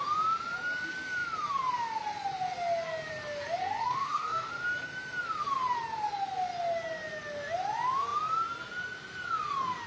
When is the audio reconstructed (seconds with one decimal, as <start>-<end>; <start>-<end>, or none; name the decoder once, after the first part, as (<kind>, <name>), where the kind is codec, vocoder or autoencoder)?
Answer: 3.6-4.5 (codec, DAC)